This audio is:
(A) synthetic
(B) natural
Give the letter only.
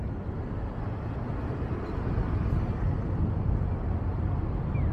B